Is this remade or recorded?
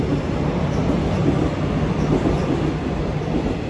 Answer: recorded